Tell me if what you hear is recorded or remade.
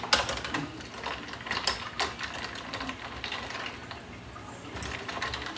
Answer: recorded